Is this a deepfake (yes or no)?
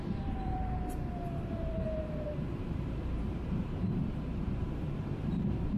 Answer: yes